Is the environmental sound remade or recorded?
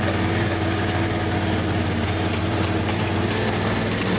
recorded